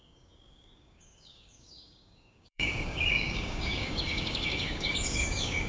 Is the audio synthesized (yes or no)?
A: yes